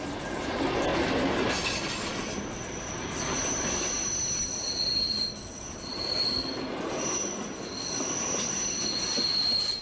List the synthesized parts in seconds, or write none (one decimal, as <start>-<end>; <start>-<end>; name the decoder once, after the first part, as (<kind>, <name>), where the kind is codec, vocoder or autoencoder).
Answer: none